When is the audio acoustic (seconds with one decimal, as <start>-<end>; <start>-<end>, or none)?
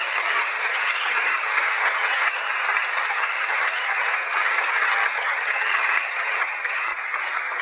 2.5-3.1; 6.9-7.6